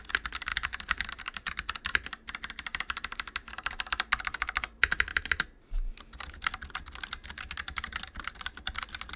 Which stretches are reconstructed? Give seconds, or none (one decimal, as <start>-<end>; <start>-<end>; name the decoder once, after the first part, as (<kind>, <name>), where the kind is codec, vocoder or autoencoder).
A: 0.5-1.9 (vocoder, BigVGAN v2); 2.7-3.7